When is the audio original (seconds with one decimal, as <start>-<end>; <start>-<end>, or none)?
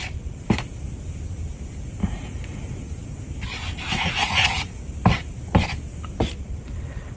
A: 0.0-2.0; 3.0-4.2; 4.8-7.2